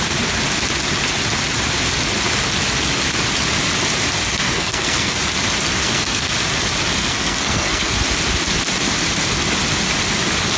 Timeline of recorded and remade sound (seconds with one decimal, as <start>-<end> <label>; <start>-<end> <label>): 0.0-4.3 recorded; 4.3-5.2 remade; 5.2-5.8 recorded; 5.8-6.3 remade; 6.3-7.0 recorded; 7.0-7.9 remade; 7.9-10.6 recorded